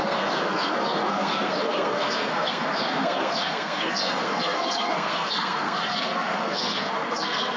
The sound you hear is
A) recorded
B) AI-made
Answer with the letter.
B